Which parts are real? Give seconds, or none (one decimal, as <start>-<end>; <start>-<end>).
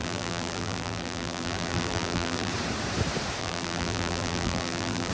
2.5-3.4